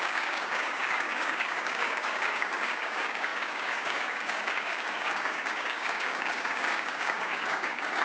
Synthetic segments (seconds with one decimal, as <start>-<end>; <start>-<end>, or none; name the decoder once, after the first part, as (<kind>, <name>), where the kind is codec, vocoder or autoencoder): 0.0-8.0 (codec, DAC)